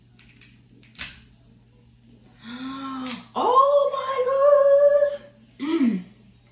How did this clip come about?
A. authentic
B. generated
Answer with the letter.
A